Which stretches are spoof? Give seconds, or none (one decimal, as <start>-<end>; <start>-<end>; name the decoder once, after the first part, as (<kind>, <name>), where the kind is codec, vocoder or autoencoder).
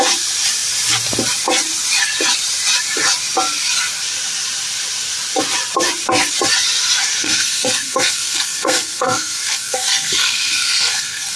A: 7.2-11.4 (codec, SNAC)